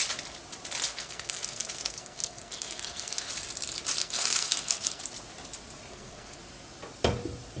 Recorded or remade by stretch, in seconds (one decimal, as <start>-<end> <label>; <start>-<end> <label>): 0.0-0.9 recorded; 0.9-3.3 remade; 3.3-4.0 recorded; 4.0-5.0 remade; 5.0-5.9 recorded; 5.9-6.4 remade; 6.4-7.6 recorded